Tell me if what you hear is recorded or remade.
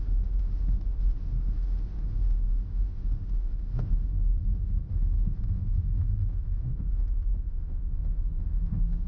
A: remade